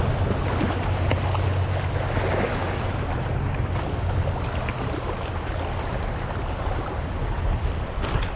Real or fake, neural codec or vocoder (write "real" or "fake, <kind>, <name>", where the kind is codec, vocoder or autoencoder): real